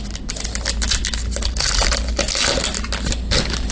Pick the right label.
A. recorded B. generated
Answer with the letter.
A